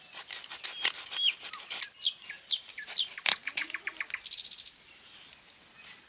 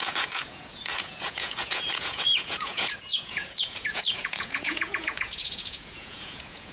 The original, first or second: first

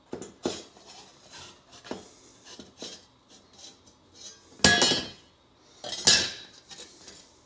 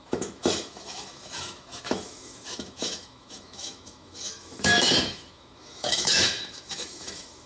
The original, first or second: first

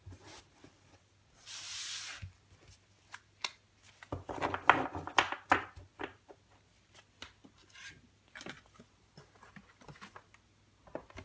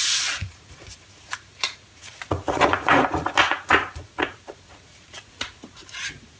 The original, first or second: first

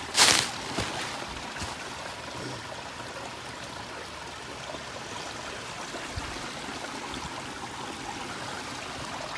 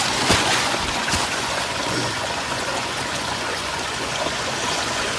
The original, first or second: first